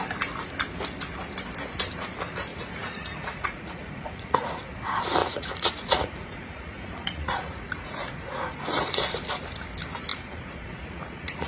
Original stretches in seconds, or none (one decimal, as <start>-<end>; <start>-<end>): 0.0-2.5; 4.5-5.2; 9.0-10.1